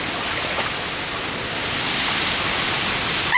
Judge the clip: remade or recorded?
recorded